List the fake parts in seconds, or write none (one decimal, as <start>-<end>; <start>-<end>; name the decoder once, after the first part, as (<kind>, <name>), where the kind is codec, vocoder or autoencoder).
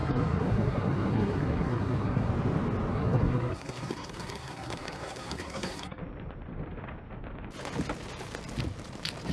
0.0-2.3 (codec, SNAC); 2.9-6.0